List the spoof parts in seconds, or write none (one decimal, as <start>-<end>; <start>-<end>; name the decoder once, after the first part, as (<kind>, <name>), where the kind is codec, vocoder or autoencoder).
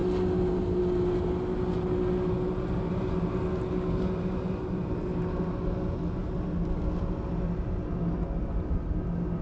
none